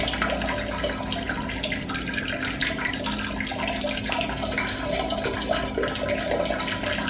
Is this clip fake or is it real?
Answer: real